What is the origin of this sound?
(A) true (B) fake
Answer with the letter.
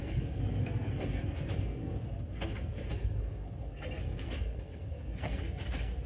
B